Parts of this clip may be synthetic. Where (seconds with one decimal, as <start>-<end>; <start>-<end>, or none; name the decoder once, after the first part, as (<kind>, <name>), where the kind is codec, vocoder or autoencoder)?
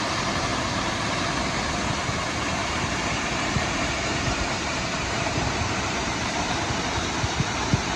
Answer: 0.5-1.2 (vocoder, BigVGAN v2); 2.6-6.6